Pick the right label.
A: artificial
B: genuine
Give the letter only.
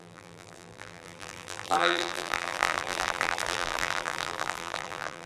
A